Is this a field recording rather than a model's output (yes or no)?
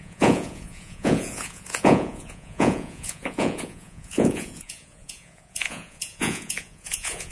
no